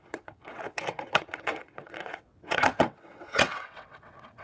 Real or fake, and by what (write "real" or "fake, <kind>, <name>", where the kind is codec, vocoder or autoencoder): fake, vocoder, WaveNeXt